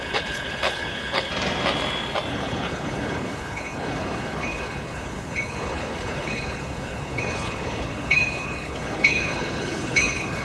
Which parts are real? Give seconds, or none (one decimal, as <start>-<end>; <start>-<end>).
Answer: 1.3-2.3